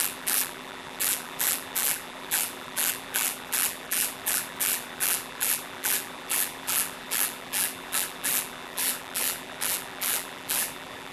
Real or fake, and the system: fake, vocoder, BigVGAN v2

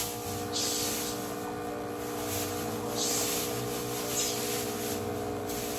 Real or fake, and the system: real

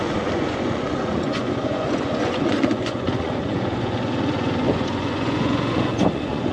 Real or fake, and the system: fake, vocoder, Vocos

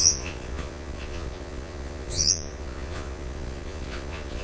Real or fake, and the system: fake, vocoder, Vocos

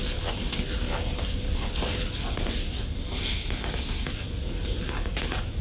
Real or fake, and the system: real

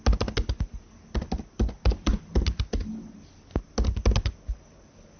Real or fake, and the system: real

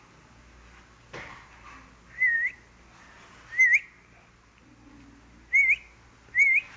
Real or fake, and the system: real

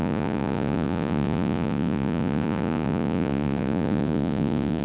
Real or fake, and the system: fake, vocoder, Vocos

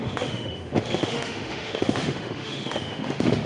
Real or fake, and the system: fake, autoencoder, DAC-VAE